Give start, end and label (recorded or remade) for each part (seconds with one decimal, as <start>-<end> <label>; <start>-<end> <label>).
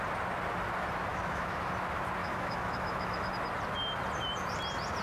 0.0-1.1 recorded; 1.1-1.7 remade; 1.7-2.2 recorded; 2.2-3.3 remade; 3.3-5.0 recorded